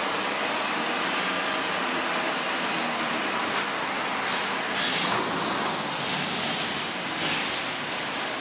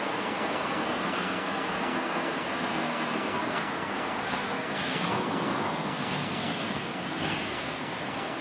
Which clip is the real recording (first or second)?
first